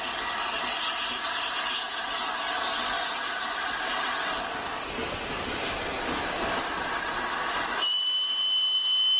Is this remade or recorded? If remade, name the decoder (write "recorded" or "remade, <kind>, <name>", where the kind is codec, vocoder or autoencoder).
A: recorded